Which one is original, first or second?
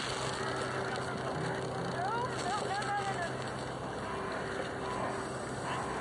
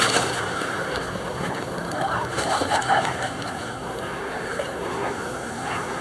first